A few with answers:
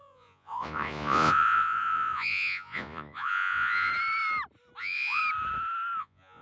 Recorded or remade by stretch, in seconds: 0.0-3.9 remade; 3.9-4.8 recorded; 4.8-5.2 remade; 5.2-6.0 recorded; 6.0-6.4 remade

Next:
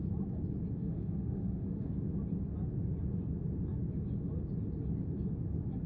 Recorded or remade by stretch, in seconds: 0.0-0.8 recorded; 0.8-1.9 remade; 1.9-5.9 recorded

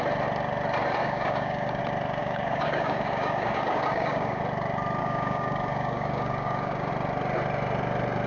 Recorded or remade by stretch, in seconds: 0.0-1.0 recorded; 1.0-1.8 remade; 1.8-2.2 recorded; 2.2-4.4 remade; 4.4-5.0 recorded; 5.0-6.9 remade; 6.9-8.3 recorded